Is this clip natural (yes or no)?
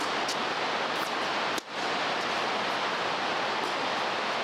yes